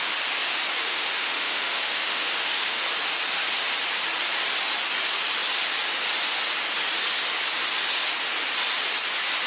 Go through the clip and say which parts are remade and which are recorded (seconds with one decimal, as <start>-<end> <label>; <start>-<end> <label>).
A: 0.0-0.8 recorded; 0.8-2.8 remade; 2.8-9.5 recorded